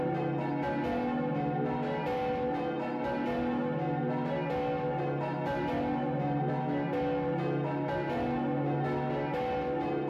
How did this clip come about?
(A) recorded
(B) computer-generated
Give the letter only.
A